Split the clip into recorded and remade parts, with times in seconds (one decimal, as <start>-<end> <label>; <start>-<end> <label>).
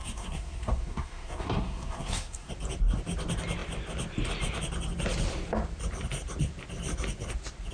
0.0-2.5 remade; 2.5-7.7 recorded